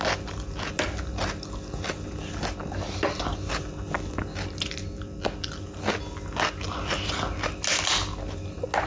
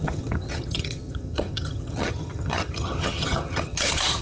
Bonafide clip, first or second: first